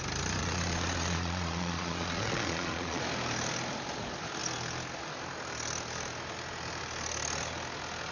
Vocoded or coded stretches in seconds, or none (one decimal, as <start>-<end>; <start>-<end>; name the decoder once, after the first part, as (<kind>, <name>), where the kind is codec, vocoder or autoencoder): 0.4-3.0 (vocoder, Vocos)

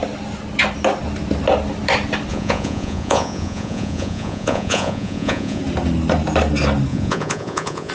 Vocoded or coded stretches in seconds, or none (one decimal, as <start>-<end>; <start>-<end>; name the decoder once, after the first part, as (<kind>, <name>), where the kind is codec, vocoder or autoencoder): 2.3-5.6 (vocoder, Vocos); 6.9-7.9